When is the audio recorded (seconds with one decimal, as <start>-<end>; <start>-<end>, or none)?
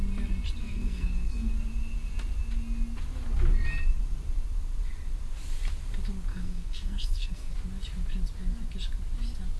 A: 0.0-0.6; 1.5-6.3; 7.5-9.6